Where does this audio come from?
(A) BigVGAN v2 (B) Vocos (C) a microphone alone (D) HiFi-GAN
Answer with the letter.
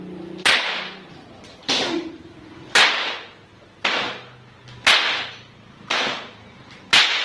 C